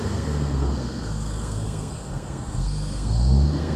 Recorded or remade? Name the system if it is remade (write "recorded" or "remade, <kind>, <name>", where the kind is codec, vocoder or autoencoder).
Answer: remade, codec, SNAC